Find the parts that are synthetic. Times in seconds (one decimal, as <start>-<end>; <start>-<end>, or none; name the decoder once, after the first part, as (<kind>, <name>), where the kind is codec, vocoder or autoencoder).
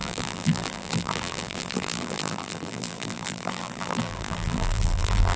0.0-5.4 (vocoder, BigVGAN v2)